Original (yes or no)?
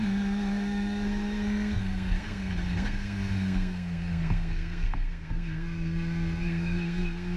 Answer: no